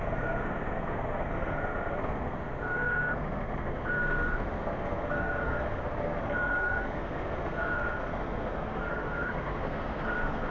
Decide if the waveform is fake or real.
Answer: fake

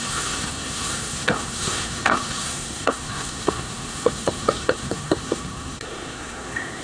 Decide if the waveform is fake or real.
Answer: fake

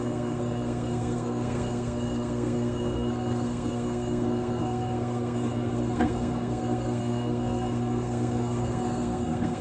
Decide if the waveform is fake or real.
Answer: fake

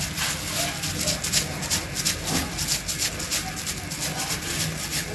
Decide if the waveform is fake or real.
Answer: real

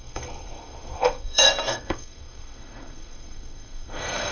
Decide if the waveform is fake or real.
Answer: fake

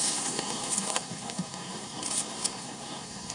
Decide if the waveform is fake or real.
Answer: fake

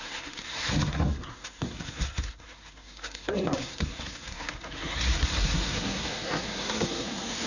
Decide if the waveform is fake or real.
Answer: fake